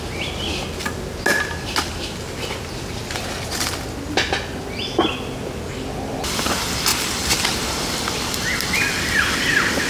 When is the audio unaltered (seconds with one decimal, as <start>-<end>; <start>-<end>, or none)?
0.0-6.9; 7.8-9.9